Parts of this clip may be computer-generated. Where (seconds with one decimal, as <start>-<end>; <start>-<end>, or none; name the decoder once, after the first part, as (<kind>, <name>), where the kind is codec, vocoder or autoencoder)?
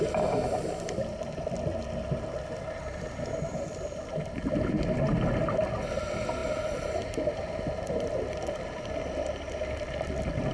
none